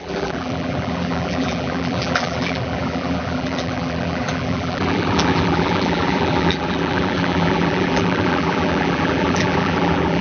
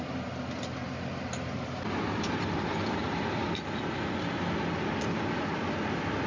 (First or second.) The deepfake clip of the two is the first